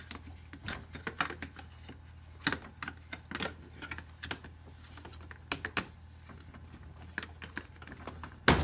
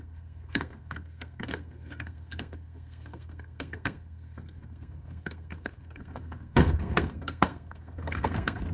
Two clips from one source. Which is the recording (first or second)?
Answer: first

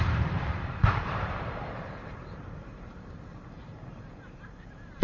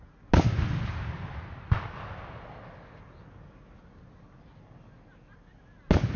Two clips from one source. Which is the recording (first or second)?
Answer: second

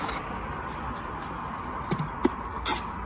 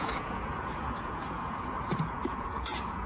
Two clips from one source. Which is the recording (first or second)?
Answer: first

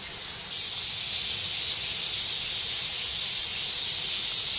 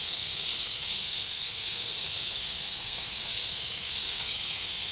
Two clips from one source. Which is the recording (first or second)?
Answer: first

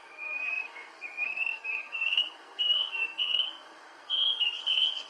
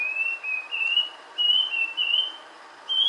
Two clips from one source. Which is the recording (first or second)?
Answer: second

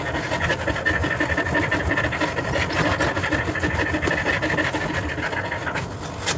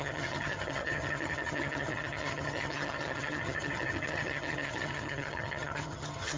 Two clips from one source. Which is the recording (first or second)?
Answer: first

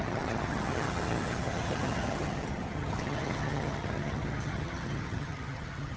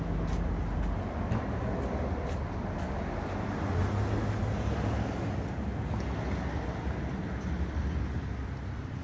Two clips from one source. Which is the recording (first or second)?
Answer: second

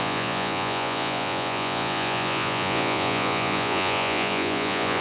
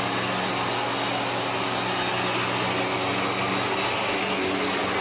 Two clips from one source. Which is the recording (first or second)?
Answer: second